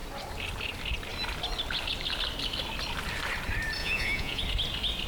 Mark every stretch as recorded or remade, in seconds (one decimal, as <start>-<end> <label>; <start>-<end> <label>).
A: 0.0-3.8 recorded; 3.8-4.4 remade; 4.4-5.1 recorded